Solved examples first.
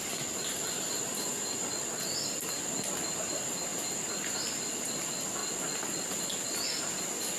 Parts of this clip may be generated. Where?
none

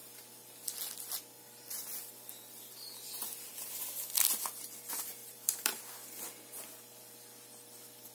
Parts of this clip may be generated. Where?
5.2-5.8